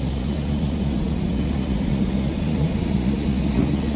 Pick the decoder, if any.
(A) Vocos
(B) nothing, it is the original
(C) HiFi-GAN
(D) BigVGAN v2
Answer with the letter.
A